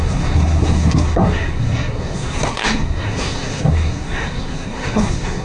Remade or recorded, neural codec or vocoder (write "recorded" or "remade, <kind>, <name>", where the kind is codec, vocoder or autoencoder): remade, codec, SNAC